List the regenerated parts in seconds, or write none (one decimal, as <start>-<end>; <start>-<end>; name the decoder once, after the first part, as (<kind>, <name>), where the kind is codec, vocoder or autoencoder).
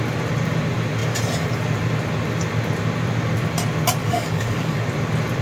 4.0-4.8 (codec, DAC)